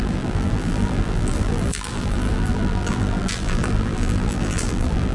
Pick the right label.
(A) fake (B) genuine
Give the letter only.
A